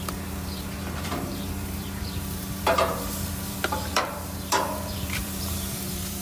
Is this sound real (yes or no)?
no